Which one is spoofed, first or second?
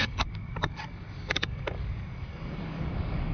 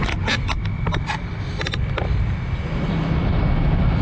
first